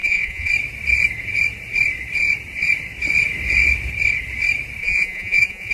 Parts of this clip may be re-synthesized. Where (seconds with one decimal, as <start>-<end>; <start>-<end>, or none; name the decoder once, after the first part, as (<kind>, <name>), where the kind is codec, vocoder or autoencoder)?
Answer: 0.0-0.5 (vocoder, Vocos); 4.8-5.7